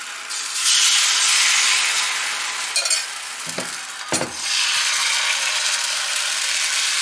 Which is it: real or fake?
real